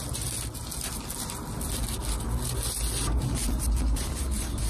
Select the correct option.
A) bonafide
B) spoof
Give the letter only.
A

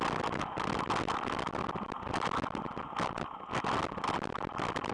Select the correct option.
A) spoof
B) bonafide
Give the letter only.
B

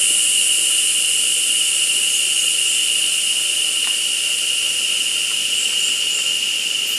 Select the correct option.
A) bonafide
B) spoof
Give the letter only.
A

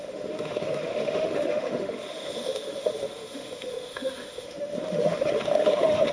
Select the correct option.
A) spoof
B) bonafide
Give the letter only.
A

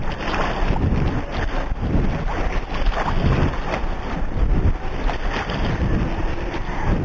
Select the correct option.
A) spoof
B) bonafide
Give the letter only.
B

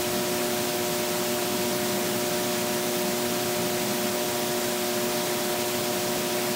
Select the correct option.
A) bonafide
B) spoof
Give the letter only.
A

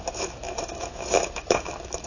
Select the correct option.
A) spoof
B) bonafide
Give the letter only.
A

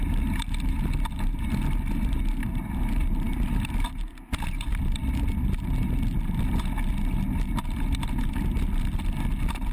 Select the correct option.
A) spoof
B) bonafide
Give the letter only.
B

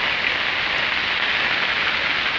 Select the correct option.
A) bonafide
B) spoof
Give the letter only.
A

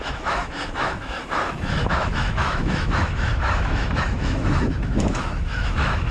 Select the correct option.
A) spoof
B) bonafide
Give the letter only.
A